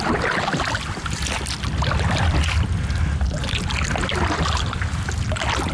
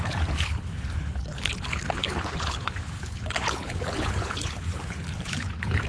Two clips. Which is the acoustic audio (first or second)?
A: first